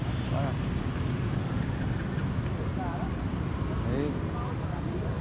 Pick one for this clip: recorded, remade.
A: recorded